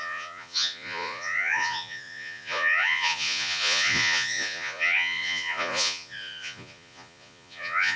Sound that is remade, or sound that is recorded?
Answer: remade